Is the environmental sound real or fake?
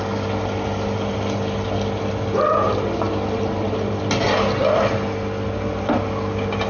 real